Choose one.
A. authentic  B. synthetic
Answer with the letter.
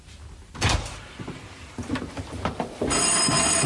A